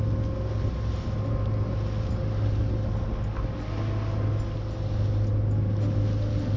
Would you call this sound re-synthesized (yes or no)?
no